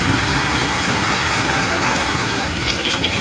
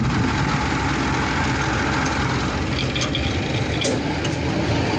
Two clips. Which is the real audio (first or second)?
second